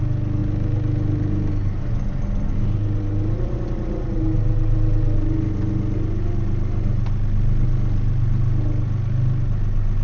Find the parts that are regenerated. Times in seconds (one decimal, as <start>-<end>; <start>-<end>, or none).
none